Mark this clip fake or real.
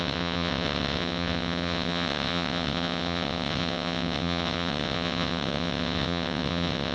fake